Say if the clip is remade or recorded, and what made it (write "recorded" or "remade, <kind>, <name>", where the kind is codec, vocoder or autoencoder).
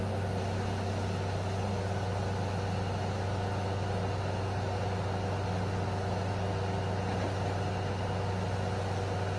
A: recorded